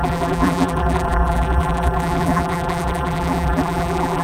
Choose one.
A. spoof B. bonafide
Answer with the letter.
A